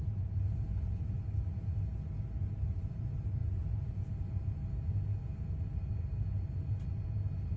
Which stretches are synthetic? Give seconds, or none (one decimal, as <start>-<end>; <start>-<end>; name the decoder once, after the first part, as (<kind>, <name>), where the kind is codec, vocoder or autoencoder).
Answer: 3.4-4.1 (vocoder, Vocos)